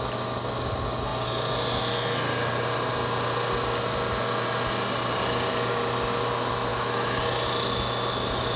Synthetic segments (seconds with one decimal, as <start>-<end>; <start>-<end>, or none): 6.7-7.2